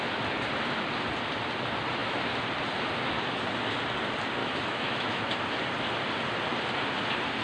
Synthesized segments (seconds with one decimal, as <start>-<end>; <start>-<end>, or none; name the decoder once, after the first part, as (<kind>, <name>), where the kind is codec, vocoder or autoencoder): 4.4-5.2 (autoencoder, DAC-VAE)

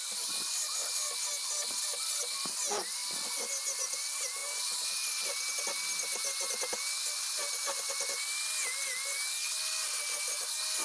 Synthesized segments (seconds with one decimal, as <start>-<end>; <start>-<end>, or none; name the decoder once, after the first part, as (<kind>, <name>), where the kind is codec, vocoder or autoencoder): none

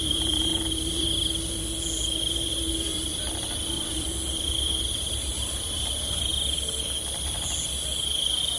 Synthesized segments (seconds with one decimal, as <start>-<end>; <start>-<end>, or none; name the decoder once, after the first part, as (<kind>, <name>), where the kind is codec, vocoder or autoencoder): 0.0-0.5 (vocoder, BigVGAN v2); 2.3-3.1; 4.9-6.3

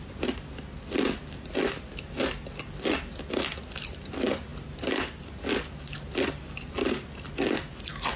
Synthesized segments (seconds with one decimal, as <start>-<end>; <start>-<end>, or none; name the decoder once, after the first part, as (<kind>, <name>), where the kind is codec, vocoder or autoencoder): none

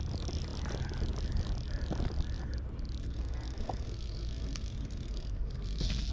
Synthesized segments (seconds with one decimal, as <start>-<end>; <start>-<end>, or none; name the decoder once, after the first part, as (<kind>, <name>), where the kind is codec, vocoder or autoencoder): 3.0-6.1 (codec, SNAC)

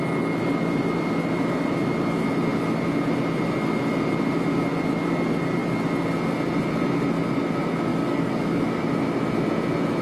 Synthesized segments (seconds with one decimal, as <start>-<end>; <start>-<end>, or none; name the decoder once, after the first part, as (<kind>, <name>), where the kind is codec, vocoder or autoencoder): 7.9-8.6 (codec, DAC)

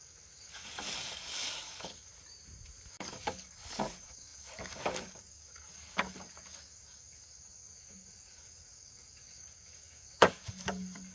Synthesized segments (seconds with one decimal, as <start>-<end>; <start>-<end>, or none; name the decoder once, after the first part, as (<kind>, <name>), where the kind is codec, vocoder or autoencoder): 0.0-2.1 (codec, DAC); 2.9-11.1